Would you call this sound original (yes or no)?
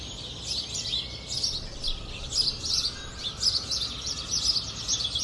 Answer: yes